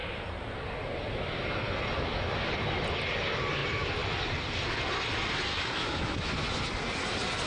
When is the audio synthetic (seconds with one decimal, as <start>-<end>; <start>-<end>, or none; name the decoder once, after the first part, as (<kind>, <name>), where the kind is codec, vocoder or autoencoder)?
5.5-6.3 (autoencoder, DAC-VAE)